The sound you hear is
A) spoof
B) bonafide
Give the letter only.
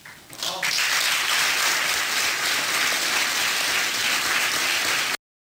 B